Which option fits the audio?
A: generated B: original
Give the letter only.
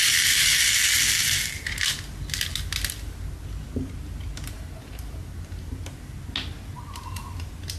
B